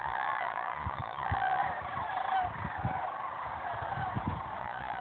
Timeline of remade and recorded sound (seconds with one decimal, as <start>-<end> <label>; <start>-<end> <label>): 0.0-1.6 remade; 1.6-4.6 recorded; 4.6-5.0 remade